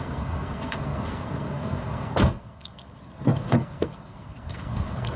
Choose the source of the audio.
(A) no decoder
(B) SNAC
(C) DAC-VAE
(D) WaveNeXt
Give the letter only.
B